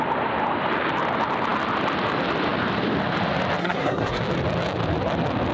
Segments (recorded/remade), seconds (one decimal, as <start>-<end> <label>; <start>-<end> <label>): 0.0-3.6 recorded; 3.6-4.2 remade; 4.2-5.5 recorded